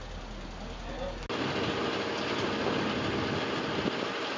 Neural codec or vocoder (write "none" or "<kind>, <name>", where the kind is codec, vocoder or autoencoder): none